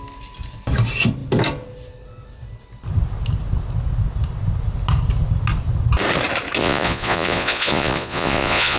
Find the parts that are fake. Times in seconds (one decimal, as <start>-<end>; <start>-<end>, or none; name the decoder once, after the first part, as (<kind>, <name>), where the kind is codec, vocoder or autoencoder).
6.6-8.8 (vocoder, Vocos)